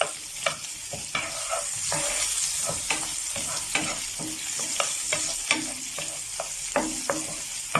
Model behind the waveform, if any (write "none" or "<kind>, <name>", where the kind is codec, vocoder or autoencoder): none